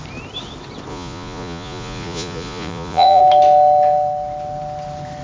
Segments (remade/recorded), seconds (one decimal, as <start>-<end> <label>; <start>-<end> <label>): 0.0-0.9 recorded; 0.9-3.2 remade; 3.2-5.2 recorded